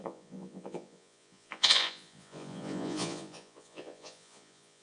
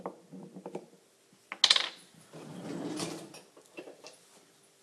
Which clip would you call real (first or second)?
second